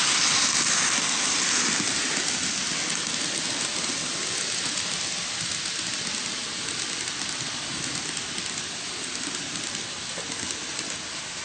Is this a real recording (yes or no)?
yes